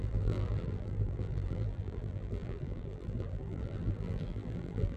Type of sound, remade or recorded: remade